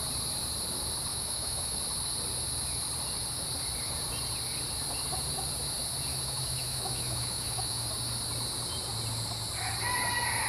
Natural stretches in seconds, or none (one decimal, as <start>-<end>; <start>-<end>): 0.0-1.1; 1.8-6.1; 7.9-10.5